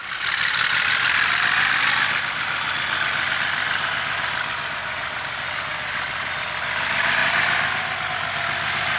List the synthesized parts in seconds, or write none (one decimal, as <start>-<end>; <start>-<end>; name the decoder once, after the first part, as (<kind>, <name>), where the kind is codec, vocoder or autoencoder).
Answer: none